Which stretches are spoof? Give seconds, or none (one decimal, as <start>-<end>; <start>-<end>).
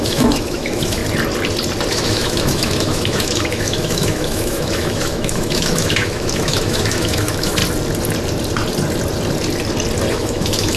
0.0-1.0; 1.9-7.6; 10.1-10.8